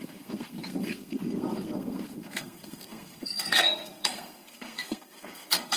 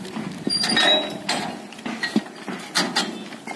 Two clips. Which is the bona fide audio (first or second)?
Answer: second